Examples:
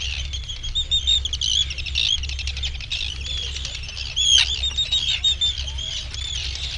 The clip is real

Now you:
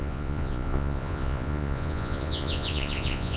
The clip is fake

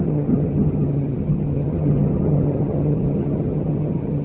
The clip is fake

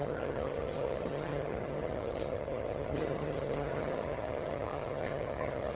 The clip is fake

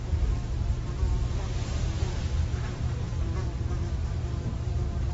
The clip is fake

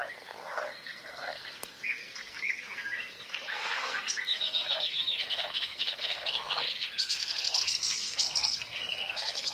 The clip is fake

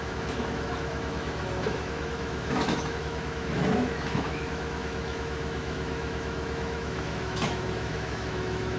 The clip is fake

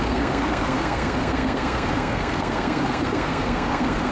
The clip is fake